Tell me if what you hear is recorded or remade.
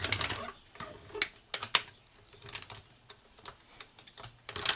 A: recorded